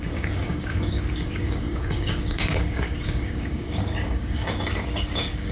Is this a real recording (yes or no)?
no